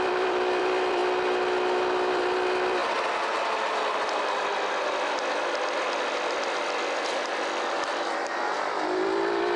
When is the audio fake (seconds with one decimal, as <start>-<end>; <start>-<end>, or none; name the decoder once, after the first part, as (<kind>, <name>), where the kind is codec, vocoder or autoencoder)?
0.0-1.0 (vocoder, BigVGAN v2); 2.1-2.8; 5.8-9.6

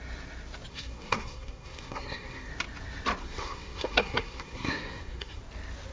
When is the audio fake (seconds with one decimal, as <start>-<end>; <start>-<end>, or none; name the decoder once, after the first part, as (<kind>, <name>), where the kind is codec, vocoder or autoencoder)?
0.7-2.5 (codec, SNAC); 3.2-5.4

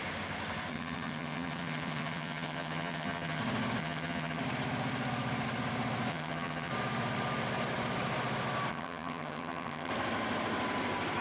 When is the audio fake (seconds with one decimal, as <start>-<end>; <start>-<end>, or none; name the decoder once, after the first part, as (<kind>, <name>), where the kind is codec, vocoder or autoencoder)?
0.7-3.4 (vocoder, HiFi-GAN); 3.8-4.4; 6.1-6.7; 8.7-9.9

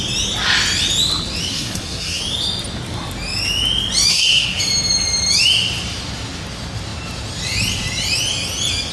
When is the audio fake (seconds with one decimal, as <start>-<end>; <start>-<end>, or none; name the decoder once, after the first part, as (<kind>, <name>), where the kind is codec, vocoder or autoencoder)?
1.5-2.2 (codec, SNAC); 4.1-4.6

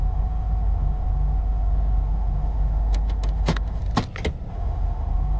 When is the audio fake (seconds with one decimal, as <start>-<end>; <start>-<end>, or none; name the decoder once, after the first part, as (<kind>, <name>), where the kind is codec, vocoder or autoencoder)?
0.0-3.8 (autoencoder, DAC-VAE); 4.5-5.4

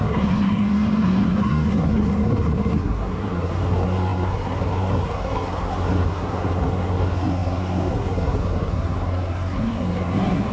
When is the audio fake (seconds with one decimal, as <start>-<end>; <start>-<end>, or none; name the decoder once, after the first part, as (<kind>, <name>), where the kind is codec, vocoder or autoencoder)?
0.0-10.5 (codec, SNAC)

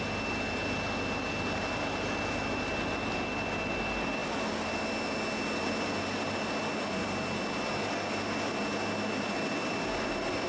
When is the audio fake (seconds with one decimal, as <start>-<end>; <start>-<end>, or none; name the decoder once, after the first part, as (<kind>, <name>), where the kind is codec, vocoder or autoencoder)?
none

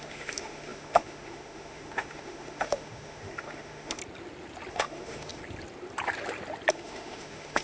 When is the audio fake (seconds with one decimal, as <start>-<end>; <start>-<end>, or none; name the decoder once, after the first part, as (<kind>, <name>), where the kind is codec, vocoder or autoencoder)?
0.0-4.0 (autoencoder, DAC-VAE); 4.7-5.4; 6.7-7.6